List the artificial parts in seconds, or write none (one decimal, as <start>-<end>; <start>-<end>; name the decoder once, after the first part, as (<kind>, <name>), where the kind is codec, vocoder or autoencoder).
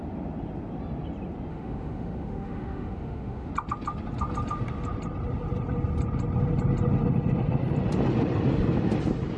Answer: 1.5-3.5 (autoencoder, DAC-VAE)